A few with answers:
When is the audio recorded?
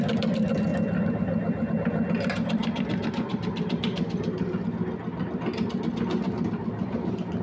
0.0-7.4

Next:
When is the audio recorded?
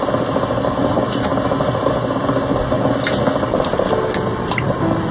1.3-4.4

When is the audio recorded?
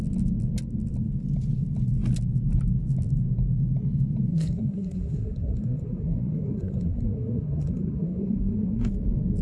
0.0-4.3; 8.9-9.4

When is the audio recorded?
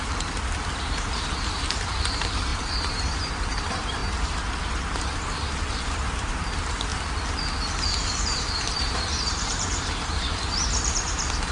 4.0-4.6; 6.9-8.1